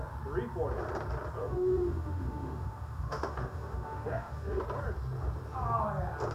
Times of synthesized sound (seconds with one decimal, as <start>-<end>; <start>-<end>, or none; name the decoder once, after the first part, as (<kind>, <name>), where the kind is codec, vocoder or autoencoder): 1.4-4.6 (autoencoder, DAC-VAE)